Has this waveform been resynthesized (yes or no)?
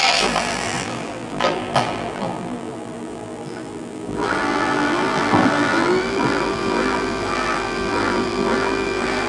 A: yes